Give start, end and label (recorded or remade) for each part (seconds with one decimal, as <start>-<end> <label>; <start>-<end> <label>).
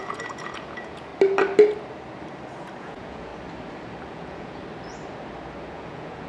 0.0-1.1 remade; 1.1-2.8 recorded; 2.8-3.3 remade; 3.3-4.1 recorded; 4.1-4.6 remade; 4.6-5.7 recorded; 5.7-6.3 remade